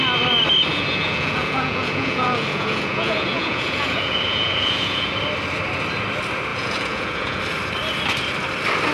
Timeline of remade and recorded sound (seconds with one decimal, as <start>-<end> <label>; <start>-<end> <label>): 0.0-0.7 recorded; 0.7-5.1 remade; 5.1-6.5 recorded; 6.5-7.4 remade; 7.4-8.9 recorded